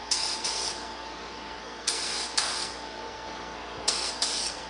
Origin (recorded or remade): remade